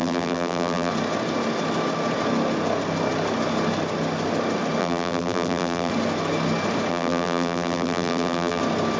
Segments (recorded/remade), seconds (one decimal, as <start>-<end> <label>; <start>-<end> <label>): 0.0-0.9 remade; 0.9-4.8 recorded; 4.8-5.9 remade; 5.9-6.9 recorded; 6.9-8.6 remade; 8.6-9.0 recorded

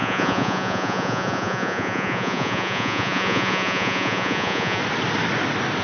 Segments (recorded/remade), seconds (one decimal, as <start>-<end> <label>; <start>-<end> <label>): 0.0-4.8 remade; 4.8-5.8 recorded